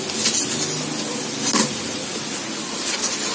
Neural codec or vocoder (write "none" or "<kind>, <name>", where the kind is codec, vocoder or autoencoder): none